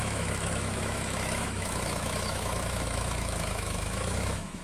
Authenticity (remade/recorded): remade